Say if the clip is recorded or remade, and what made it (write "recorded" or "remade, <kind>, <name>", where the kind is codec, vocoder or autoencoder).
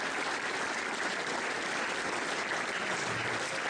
recorded